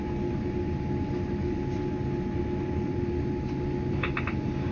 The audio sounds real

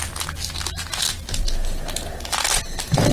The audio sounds real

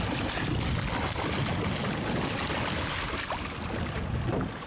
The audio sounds real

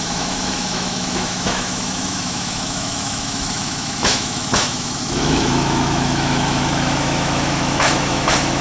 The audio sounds fake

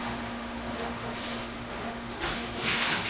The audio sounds fake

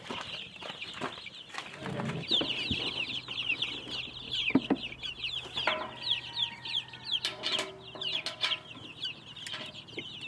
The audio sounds real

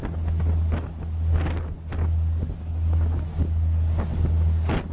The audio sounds real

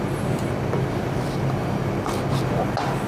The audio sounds real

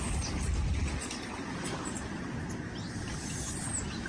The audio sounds real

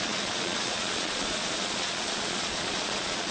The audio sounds fake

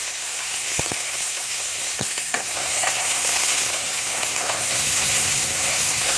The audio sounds fake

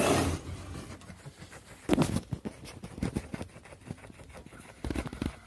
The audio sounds real